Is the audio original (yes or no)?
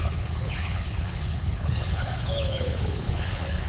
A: no